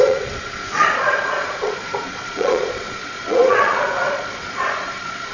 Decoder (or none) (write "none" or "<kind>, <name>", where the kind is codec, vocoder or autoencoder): vocoder, Vocos